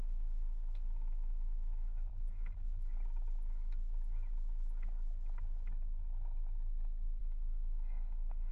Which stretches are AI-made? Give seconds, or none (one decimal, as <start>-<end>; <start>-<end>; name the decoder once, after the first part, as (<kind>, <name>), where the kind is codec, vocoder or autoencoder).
0.0-2.1 (autoencoder, DAC-VAE); 7.2-8.5

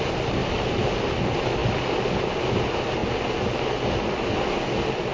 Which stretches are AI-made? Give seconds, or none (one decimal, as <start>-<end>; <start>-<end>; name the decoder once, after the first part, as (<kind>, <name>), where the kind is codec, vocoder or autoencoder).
none

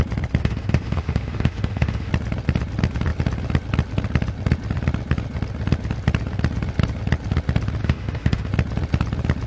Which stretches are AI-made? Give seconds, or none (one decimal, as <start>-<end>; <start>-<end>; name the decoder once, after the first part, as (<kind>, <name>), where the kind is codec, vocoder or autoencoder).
0.4-2.1 (autoencoder, DAC-VAE); 7.8-8.5

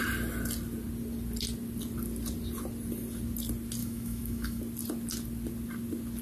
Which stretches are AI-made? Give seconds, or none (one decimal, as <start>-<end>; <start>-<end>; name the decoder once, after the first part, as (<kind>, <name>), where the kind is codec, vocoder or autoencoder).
3.8-4.6 (autoencoder, DAC-VAE)

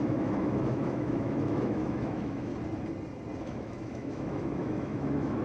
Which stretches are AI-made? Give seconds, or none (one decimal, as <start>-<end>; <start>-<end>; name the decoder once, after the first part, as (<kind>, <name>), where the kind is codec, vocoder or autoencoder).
0.0-2.5 (autoencoder, DAC-VAE); 3.4-5.4

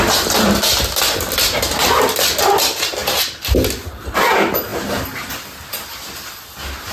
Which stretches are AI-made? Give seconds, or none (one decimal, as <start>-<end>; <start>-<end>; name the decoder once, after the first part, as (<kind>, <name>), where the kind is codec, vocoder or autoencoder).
none